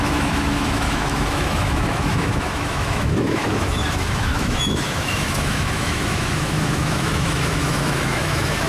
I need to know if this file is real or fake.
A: fake